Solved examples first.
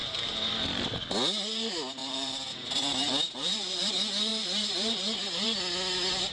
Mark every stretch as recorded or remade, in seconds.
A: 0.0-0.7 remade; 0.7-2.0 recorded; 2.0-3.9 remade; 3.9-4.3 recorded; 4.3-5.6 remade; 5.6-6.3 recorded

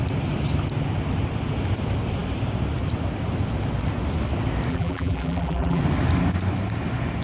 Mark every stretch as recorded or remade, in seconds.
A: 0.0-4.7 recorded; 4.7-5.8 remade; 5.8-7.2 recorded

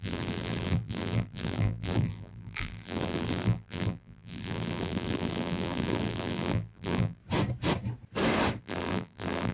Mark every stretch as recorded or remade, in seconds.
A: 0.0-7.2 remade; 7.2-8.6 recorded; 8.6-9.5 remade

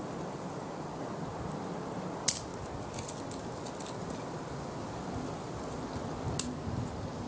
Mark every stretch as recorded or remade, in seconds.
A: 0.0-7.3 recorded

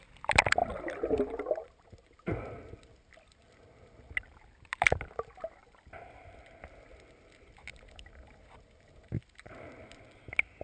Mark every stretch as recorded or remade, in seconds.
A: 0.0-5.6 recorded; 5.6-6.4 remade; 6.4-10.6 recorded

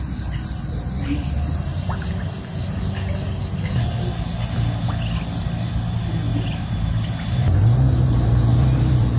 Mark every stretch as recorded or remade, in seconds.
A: 0.0-6.3 recorded; 6.3-9.2 remade

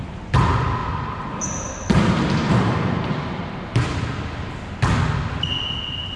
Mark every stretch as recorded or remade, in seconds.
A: 0.0-0.8 recorded; 0.8-4.5 remade; 4.5-6.2 recorded